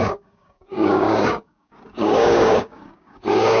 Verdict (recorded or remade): remade